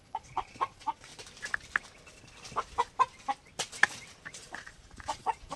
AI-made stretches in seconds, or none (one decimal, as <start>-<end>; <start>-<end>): 0.0-1.1; 4.3-5.6

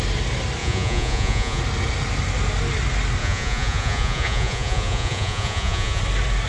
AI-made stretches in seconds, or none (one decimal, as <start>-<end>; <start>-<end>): 0.6-1.6; 3.2-6.0

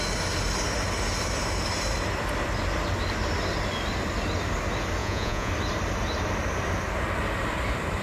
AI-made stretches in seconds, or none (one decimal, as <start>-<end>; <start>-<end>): 5.0-5.5

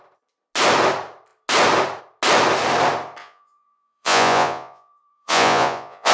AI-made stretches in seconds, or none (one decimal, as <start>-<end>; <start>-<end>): 3.2-6.1

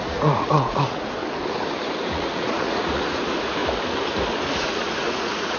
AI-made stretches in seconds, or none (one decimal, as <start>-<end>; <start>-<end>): 0.0-1.2; 2.0-3.6; 4.5-5.6

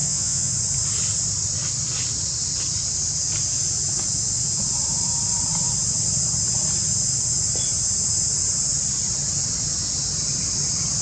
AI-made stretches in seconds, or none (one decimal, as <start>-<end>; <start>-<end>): 0.0-0.5